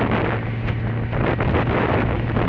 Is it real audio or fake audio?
real